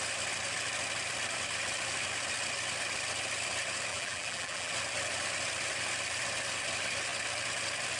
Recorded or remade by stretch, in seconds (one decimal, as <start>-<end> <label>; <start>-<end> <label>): 0.0-3.9 recorded; 3.9-4.7 remade; 4.7-8.0 recorded

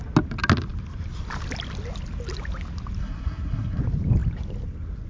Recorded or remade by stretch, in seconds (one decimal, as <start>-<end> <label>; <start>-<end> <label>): 0.0-3.0 recorded; 3.0-3.8 remade; 3.8-5.1 recorded

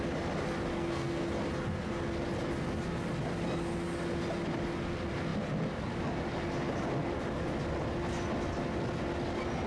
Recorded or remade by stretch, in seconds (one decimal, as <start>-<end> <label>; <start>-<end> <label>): 0.0-0.7 recorded; 0.7-1.3 remade; 1.3-9.7 recorded

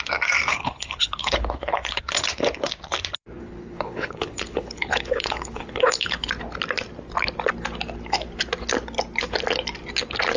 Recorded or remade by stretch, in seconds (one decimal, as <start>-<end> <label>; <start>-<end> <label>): 0.0-0.5 recorded; 0.5-2.0 remade; 2.0-3.4 recorded; 3.4-6.3 remade; 6.3-10.4 recorded

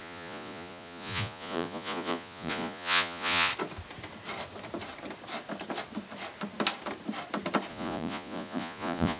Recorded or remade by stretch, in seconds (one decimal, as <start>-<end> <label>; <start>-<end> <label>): 0.0-3.5 remade; 3.5-7.7 recorded; 7.7-9.2 remade

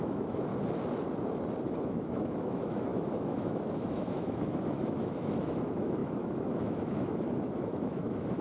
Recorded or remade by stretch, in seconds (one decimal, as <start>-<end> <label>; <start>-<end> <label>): 0.0-0.5 remade; 0.5-1.6 recorded; 1.6-8.4 remade